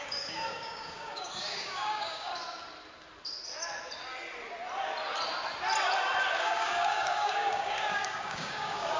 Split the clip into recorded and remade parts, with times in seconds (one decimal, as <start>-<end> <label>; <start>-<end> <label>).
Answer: 0.0-2.3 remade; 2.3-6.4 recorded; 6.4-9.0 remade